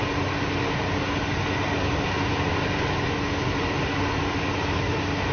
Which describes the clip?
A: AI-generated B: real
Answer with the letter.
B